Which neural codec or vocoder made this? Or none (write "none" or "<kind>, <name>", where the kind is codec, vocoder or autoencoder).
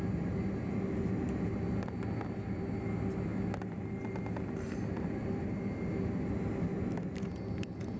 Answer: none